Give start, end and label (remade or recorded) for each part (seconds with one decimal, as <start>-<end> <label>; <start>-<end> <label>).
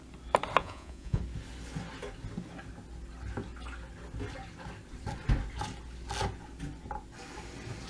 0.0-0.6 recorded; 0.6-1.2 remade; 1.2-7.9 recorded